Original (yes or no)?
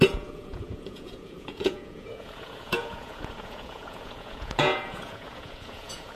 no